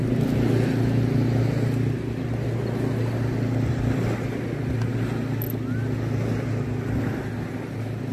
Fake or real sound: real